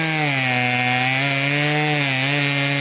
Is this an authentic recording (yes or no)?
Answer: yes